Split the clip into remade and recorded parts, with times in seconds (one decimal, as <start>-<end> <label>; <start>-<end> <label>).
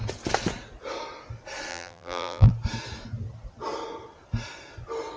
0.0-1.7 recorded; 1.7-2.5 remade; 2.5-5.2 recorded